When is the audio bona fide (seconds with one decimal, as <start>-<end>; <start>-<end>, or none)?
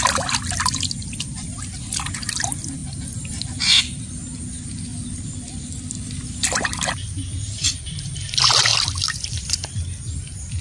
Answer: 0.0-10.6